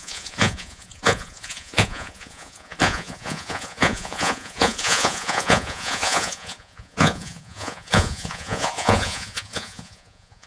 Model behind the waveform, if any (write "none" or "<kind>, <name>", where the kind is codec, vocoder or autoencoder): vocoder, Vocos